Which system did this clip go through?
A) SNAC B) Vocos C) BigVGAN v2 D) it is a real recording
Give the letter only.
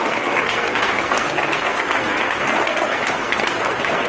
A